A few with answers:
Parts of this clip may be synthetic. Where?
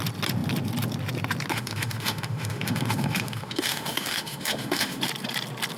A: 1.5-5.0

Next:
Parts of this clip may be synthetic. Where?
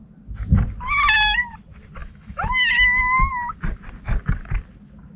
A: 2.0-3.3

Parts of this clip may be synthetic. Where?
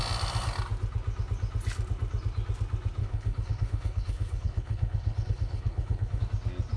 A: 3.0-6.2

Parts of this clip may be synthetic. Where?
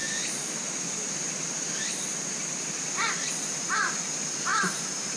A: 4.5-5.2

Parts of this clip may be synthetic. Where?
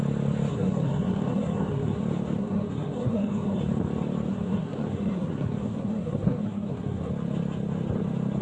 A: 0.5-2.0; 2.4-3.6; 4.3-7.1